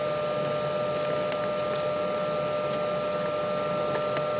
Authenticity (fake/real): real